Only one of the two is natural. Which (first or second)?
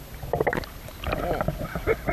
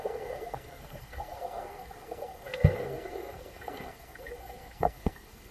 first